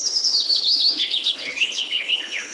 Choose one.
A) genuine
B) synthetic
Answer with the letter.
B